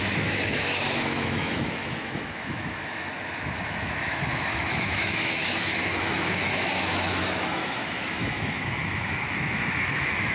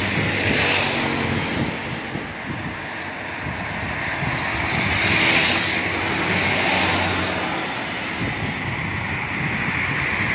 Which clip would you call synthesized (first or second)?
first